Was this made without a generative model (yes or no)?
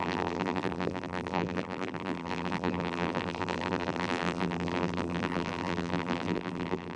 no